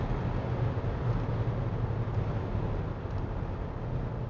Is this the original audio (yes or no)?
yes